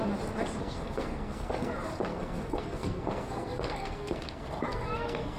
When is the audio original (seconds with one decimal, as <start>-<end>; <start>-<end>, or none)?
0.0-0.6; 1.7-2.1